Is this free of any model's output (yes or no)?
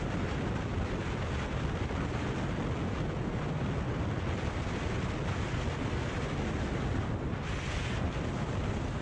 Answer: yes